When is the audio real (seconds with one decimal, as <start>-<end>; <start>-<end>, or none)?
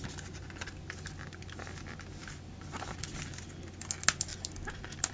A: 0.0-2.2; 3.1-5.1